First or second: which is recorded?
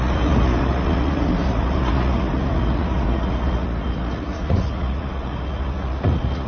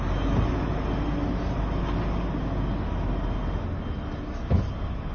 second